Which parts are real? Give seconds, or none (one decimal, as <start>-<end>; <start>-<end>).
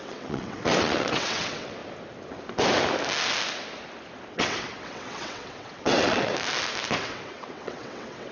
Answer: 1.8-4.3; 6.3-7.0